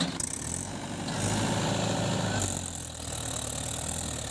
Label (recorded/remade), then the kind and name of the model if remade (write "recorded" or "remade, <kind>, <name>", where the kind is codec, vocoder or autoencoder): recorded